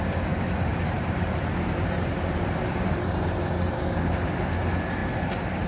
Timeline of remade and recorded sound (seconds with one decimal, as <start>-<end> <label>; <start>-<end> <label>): 0.0-0.7 recorded; 0.7-4.0 remade; 4.0-5.7 recorded